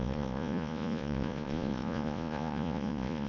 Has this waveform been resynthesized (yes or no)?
yes